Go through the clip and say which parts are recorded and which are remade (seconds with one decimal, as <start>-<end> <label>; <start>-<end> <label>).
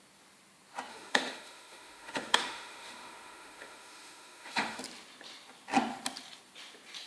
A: 0.0-0.9 recorded; 0.9-4.8 remade; 4.8-7.1 recorded